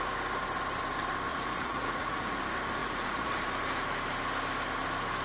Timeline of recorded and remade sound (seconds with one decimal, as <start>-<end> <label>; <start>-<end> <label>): 0.0-1.3 recorded; 1.3-2.4 remade; 2.4-2.8 recorded; 2.8-3.3 remade; 3.3-5.2 recorded